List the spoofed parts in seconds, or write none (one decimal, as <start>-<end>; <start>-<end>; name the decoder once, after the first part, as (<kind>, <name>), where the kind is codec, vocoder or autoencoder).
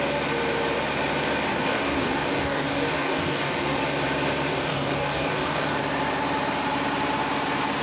1.5-3.8 (codec, DAC); 4.5-5.8